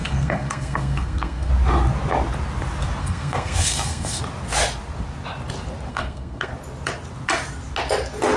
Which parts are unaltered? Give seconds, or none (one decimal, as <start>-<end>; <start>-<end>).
1.5-3.0; 4.2-5.9; 6.5-8.4